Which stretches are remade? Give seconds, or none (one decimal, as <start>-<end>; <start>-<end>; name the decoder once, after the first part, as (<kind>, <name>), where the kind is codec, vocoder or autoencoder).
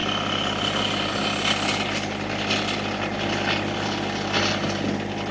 none